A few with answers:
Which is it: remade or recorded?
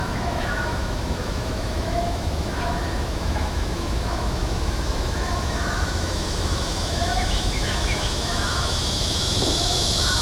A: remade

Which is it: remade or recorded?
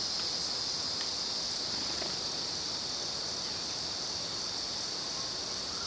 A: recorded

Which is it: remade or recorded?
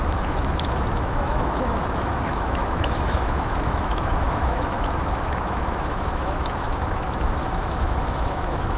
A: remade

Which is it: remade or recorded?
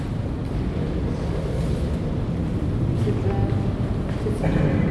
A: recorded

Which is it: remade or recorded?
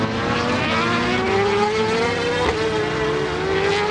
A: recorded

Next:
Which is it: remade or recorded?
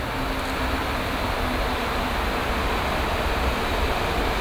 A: recorded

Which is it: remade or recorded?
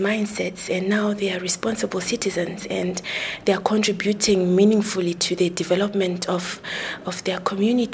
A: recorded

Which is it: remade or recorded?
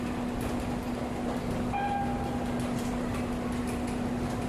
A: recorded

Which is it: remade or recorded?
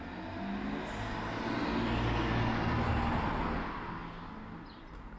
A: recorded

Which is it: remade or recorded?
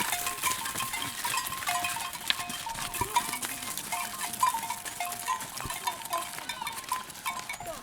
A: recorded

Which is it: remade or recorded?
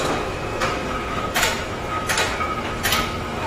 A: remade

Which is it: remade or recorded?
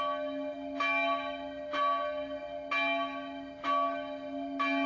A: recorded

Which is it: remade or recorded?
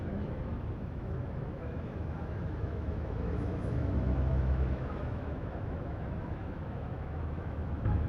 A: remade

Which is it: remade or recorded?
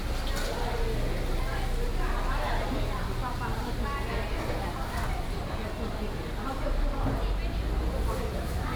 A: recorded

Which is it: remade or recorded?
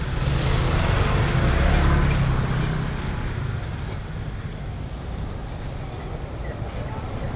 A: recorded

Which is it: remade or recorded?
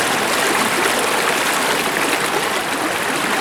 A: recorded